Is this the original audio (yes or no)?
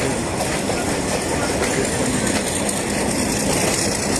no